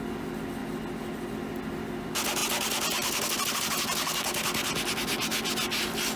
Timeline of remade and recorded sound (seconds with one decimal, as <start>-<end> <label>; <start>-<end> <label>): 0.0-6.2 recorded

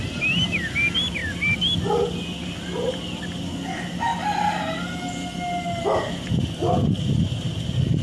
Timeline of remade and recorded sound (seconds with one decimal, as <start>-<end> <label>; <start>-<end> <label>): 0.0-8.0 recorded

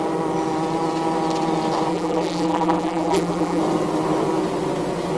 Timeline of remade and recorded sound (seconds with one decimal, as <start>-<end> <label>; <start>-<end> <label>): 0.0-1.9 recorded; 1.9-3.6 remade; 3.6-5.2 recorded

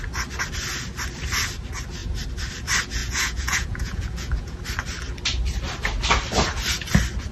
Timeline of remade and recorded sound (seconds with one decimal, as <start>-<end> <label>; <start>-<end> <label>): 0.0-3.0 recorded; 3.0-4.6 remade; 4.6-7.3 recorded